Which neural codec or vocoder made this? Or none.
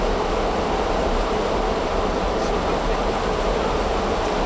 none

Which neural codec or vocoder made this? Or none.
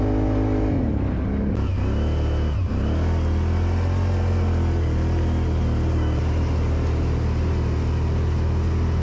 none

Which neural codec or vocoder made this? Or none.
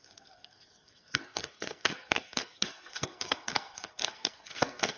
codec, SNAC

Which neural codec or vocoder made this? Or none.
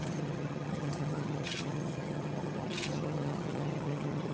vocoder, HiFi-GAN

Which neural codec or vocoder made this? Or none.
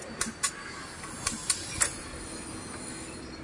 none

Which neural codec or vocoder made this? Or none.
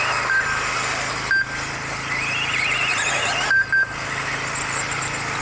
none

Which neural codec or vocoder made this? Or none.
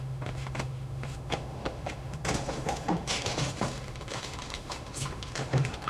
autoencoder, DAC-VAE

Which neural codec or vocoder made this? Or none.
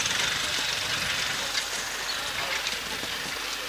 none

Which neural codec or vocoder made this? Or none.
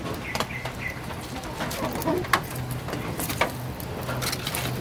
none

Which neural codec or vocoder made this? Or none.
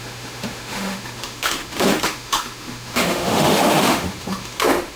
autoencoder, DAC-VAE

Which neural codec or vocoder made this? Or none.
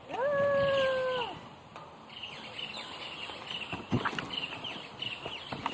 none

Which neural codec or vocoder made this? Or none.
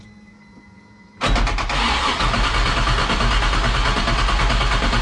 none